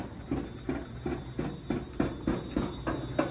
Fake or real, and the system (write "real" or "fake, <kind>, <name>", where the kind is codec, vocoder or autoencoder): real